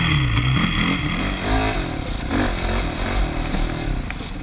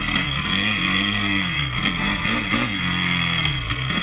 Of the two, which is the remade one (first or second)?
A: second